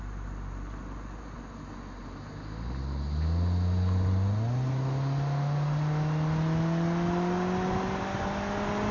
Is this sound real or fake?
real